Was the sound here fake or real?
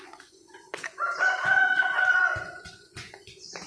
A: fake